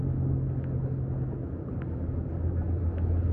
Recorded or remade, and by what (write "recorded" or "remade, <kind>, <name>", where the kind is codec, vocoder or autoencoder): recorded